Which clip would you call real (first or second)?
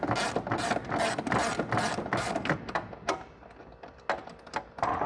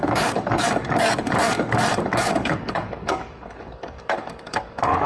first